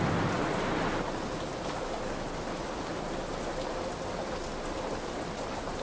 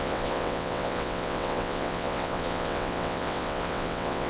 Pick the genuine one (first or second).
first